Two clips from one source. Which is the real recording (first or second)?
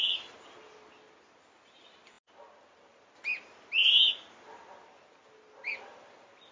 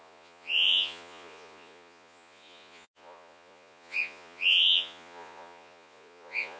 first